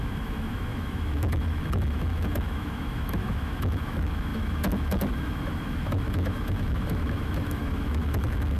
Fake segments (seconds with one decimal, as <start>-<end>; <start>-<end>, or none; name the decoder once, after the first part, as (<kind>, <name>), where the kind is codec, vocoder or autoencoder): 0.0-8.6 (autoencoder, DAC-VAE)